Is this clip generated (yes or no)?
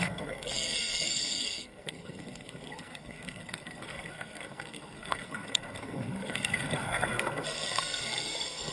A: yes